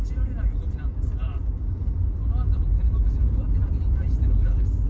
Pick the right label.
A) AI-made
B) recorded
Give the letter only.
B